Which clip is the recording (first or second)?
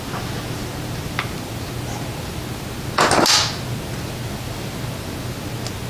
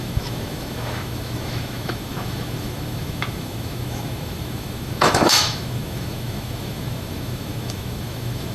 first